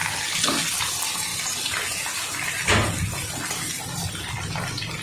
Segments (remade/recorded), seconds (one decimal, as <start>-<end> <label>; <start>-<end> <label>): 0.0-0.8 remade; 0.8-5.0 recorded